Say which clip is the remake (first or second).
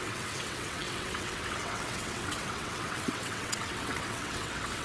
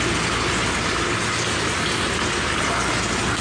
first